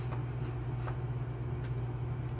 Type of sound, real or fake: real